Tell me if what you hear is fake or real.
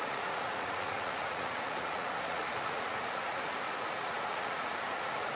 fake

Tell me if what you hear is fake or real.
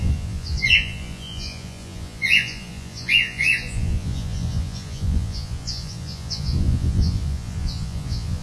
fake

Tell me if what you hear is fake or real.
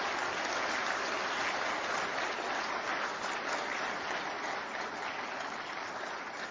real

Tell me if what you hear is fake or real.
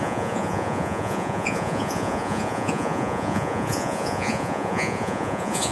fake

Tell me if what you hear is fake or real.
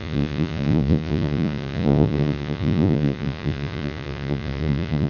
fake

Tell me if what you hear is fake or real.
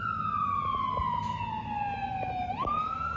real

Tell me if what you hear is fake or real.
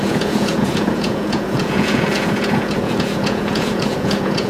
fake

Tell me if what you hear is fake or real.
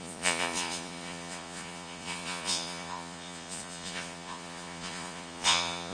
fake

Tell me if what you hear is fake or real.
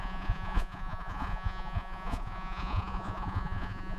fake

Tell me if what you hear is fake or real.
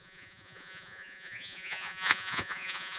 fake